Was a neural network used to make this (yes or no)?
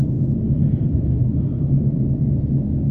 yes